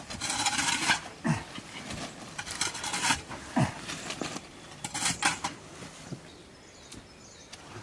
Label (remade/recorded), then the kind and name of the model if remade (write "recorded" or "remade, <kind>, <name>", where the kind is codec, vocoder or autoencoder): remade, vocoder, BigVGAN v2